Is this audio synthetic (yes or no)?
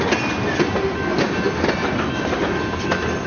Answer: no